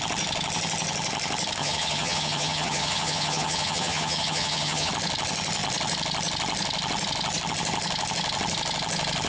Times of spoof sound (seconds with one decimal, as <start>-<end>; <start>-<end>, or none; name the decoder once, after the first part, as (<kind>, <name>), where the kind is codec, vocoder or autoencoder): 1.6-4.9 (vocoder, HiFi-GAN)